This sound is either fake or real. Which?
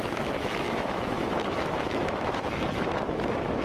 fake